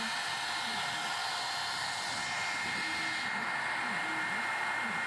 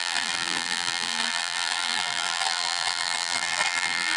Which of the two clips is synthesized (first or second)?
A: second